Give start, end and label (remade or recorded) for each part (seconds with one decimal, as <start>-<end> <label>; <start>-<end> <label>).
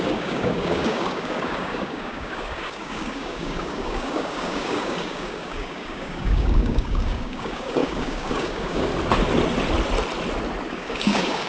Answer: 0.0-8.9 remade; 8.9-10.7 recorded; 10.7-11.5 remade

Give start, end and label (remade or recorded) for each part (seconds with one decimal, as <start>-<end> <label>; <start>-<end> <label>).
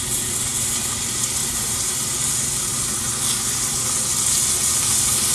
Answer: 0.0-5.3 recorded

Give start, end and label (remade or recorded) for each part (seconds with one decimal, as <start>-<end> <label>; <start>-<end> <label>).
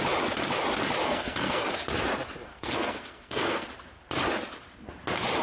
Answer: 0.0-1.0 recorded; 1.0-1.7 remade; 1.7-2.5 recorded; 2.5-3.7 remade; 3.7-5.4 recorded